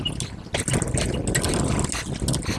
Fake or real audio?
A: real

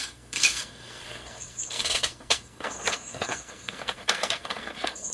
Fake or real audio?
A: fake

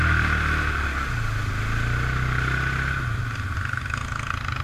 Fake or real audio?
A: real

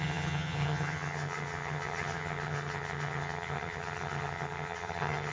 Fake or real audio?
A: fake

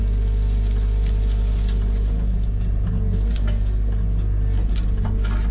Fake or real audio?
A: real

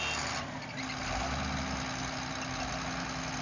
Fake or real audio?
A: real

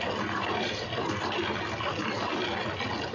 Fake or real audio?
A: real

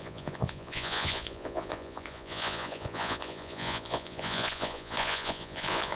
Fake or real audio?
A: fake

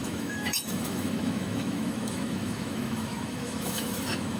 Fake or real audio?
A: fake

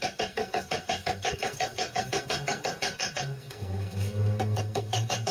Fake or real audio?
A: fake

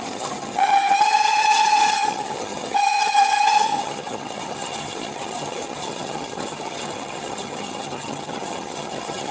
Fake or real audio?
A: fake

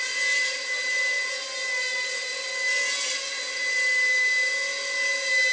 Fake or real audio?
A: real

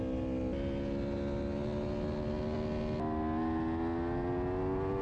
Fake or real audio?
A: real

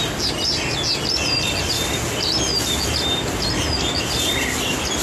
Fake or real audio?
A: real